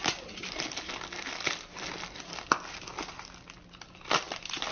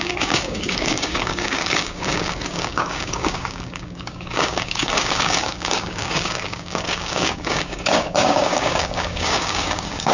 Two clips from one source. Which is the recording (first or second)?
first